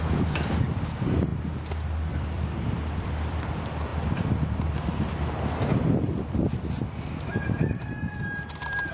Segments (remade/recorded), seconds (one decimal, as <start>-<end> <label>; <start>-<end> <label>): 0.0-1.3 remade; 1.3-2.1 recorded; 2.1-3.9 remade; 3.9-8.5 recorded; 8.5-8.9 remade